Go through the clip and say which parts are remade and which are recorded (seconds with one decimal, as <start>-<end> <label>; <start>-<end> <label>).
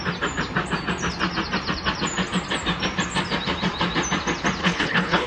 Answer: 0.0-4.6 recorded; 4.6-5.3 remade